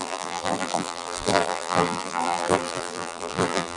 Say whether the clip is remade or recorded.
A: remade